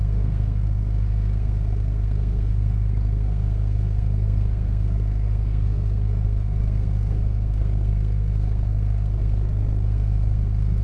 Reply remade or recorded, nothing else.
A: remade